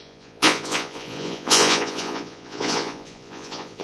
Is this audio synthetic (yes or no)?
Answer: yes